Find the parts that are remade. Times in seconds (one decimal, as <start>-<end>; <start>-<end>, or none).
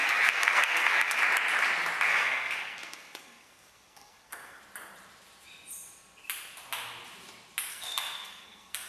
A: 0.0-1.2; 2.1-4.6; 7.7-8.9